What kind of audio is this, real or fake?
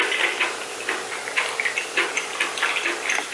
real